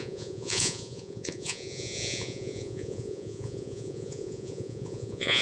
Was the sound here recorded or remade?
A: remade